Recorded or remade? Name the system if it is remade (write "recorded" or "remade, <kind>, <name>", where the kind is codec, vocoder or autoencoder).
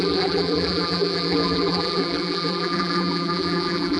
remade, vocoder, BigVGAN v2